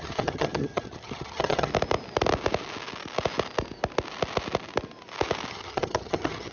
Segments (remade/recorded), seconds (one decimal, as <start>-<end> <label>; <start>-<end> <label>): 0.0-1.7 remade; 1.7-5.5 recorded; 5.5-6.5 remade